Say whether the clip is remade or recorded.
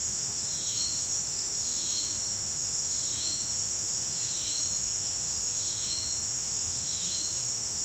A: remade